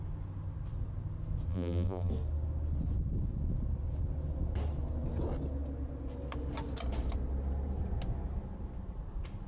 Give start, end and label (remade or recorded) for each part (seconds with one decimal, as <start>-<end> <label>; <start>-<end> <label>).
0.0-1.5 recorded; 1.5-2.1 remade; 2.1-9.5 recorded